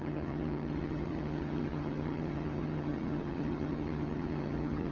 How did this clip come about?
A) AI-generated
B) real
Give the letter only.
A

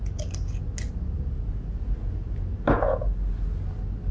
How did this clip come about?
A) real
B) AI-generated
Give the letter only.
A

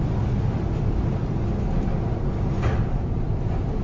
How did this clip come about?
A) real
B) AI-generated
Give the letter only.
A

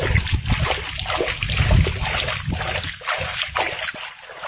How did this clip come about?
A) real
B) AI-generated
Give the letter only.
A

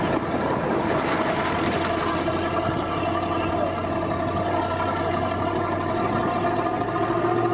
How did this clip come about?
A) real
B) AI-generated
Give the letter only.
A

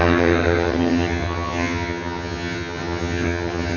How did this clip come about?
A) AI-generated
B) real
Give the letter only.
A